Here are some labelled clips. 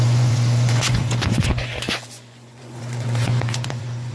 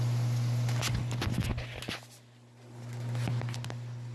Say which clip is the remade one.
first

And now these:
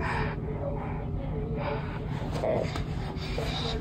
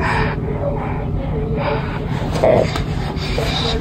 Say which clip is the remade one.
second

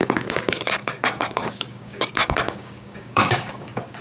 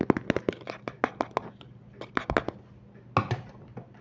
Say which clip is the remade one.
first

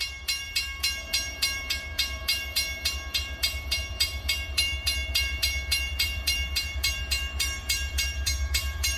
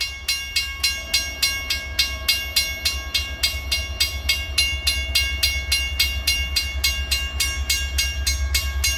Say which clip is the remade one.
first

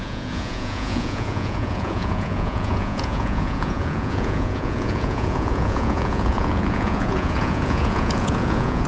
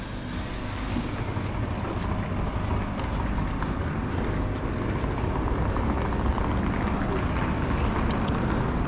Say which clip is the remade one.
first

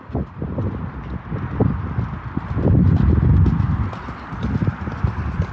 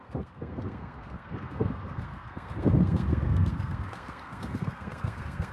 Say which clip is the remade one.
second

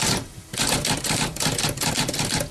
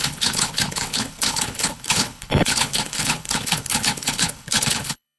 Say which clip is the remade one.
second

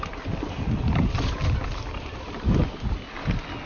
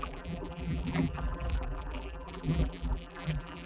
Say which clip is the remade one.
second